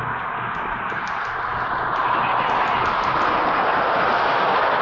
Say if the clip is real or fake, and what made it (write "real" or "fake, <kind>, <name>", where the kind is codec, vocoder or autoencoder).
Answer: real